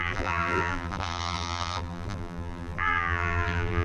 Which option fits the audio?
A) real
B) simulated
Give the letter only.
B